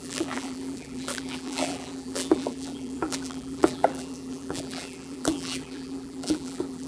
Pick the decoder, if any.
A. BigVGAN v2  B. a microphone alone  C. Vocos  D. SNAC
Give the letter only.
A